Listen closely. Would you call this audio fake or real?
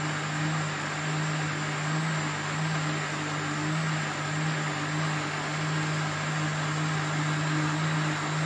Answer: real